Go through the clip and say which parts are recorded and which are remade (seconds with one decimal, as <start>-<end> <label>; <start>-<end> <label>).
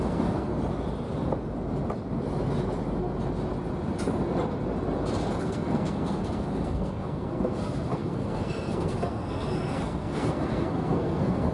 0.0-0.5 remade; 0.5-5.4 recorded; 5.4-11.5 remade